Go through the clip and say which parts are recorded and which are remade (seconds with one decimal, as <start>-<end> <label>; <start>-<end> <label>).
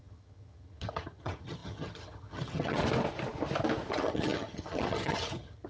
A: 0.0-2.8 remade; 2.8-3.9 recorded; 3.9-5.7 remade